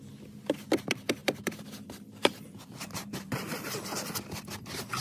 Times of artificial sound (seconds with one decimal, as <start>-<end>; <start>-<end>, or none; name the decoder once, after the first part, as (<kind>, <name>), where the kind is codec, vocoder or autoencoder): 1.2-3.3 (vocoder, BigVGAN v2)